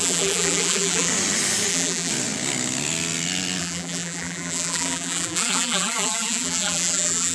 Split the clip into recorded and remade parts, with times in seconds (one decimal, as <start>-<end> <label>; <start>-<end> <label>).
0.0-1.1 remade; 1.1-1.7 recorded; 1.7-2.1 remade; 2.1-3.6 recorded; 3.6-7.3 remade